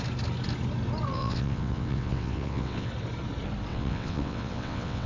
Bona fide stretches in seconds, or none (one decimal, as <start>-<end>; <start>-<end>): 0.0-1.1; 2.9-3.7